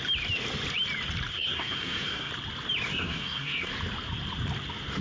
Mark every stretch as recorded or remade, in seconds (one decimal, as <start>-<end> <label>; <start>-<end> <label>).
0.0-1.3 recorded; 1.3-2.3 remade; 2.3-2.9 recorded; 2.9-3.7 remade; 3.7-5.0 recorded